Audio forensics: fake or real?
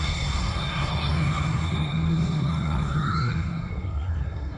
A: fake